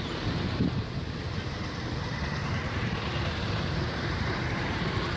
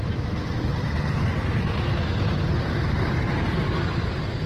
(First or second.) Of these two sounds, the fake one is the first